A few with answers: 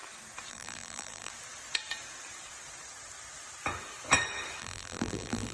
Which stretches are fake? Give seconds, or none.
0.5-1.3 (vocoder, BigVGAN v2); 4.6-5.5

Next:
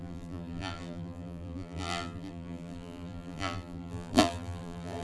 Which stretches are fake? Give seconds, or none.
0.0-5.0 (vocoder, BigVGAN v2)

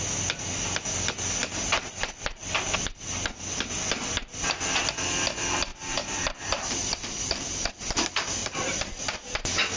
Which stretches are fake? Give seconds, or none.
5.7-7.7 (vocoder, BigVGAN v2); 8.4-9.0

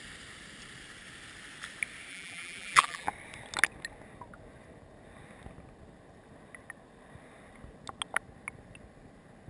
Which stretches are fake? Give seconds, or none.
2.1-3.1 (vocoder, BigVGAN v2)

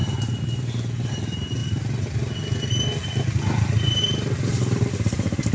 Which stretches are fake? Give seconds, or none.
0.0-5.5 (vocoder, BigVGAN v2)

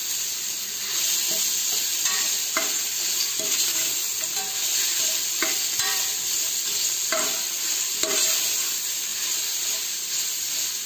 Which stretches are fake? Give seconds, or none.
0.0-1.4 (vocoder, BigVGAN v2); 1.9-3.1; 4.9-7.5

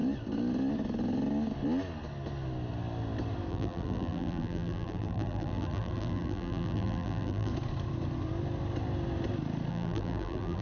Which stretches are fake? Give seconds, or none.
3.5-7.5 (vocoder, BigVGAN v2); 9.7-10.6